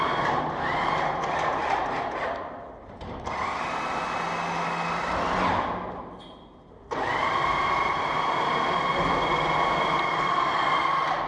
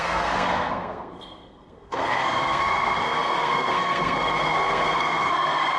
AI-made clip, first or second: second